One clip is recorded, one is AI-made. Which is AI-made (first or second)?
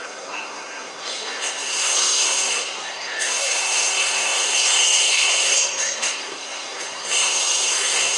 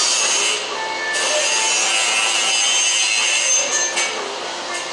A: first